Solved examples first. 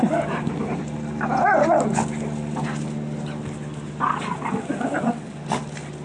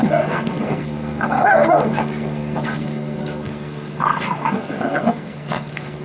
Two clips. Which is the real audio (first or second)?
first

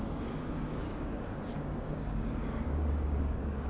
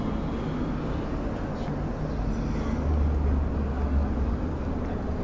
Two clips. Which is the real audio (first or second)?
second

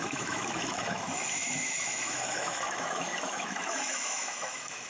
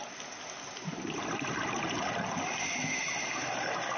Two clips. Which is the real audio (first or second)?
second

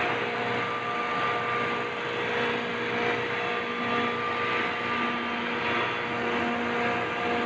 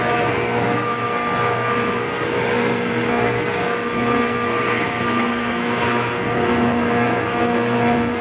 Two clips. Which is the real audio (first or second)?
first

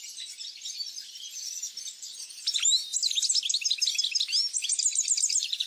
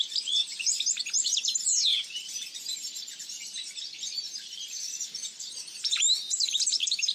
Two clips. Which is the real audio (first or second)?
first